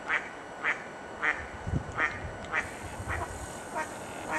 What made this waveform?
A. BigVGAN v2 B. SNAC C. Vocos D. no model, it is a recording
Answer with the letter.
D